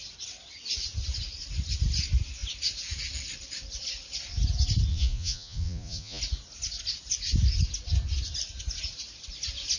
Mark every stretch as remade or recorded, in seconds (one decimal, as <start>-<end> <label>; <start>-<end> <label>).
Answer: 0.0-4.9 recorded; 4.9-6.2 remade; 6.2-9.8 recorded